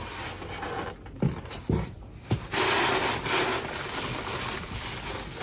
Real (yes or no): yes